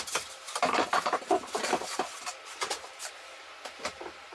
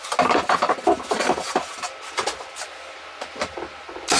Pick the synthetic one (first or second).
first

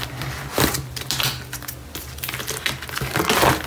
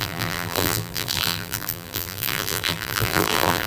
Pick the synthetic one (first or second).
second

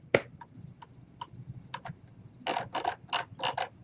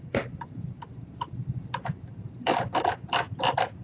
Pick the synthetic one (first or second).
second